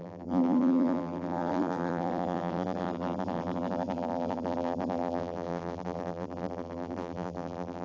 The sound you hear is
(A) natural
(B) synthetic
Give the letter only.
B